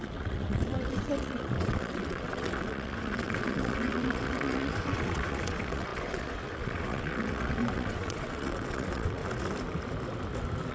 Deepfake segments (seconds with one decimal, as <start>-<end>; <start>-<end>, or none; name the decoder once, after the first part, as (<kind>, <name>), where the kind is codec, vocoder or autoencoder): 0.0-9.2 (vocoder, WaveNeXt)